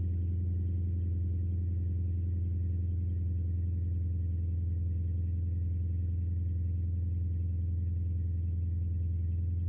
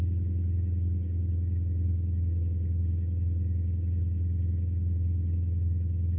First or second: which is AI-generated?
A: second